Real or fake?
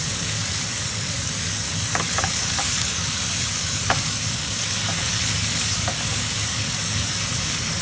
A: fake